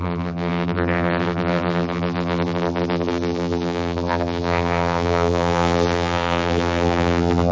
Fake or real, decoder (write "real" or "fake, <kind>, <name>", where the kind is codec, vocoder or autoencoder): fake, vocoder, BigVGAN v2